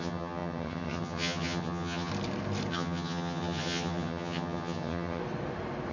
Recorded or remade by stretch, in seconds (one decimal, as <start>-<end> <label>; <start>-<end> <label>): 0.0-2.1 remade; 2.1-2.7 recorded; 2.7-5.2 remade; 5.2-5.9 recorded